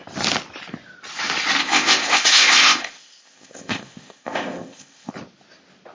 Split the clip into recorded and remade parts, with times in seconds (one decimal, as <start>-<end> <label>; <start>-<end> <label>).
0.0-1.6 recorded; 1.6-5.1 remade; 5.1-5.9 recorded

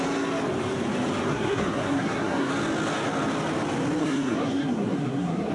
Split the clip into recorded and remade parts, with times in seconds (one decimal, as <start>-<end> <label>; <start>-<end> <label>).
0.0-1.3 recorded; 1.3-2.5 remade; 2.5-4.0 recorded; 4.0-5.5 remade

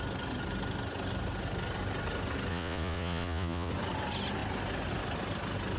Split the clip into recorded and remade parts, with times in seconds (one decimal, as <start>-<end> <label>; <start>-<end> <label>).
0.0-2.5 recorded; 2.5-3.7 remade; 3.7-5.8 recorded

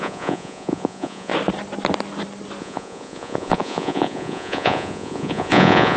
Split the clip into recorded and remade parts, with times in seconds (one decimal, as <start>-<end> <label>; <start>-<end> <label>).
0.0-1.3 remade; 1.3-2.6 recorded; 2.6-6.0 remade

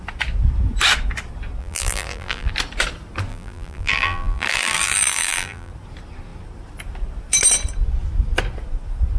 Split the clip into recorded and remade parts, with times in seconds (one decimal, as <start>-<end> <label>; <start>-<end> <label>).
0.0-1.6 recorded; 1.6-2.5 remade; 2.5-3.3 recorded; 3.3-5.7 remade; 5.7-9.2 recorded

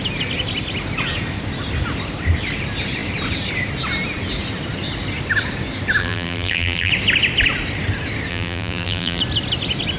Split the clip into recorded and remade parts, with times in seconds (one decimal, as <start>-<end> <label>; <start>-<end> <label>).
0.0-6.0 recorded; 6.0-6.9 remade; 6.9-8.3 recorded; 8.3-9.2 remade; 9.2-10.0 recorded

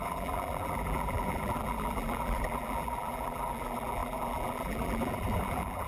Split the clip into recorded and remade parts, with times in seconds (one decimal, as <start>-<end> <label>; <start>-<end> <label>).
0.0-5.9 remade